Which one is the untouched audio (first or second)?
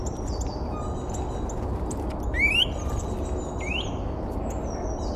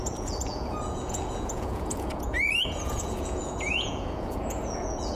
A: first